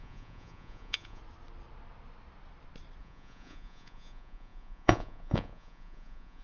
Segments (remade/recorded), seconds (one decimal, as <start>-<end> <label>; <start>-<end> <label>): 0.0-1.2 remade; 1.2-3.0 recorded; 3.0-6.4 remade